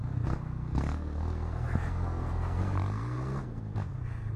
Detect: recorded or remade remade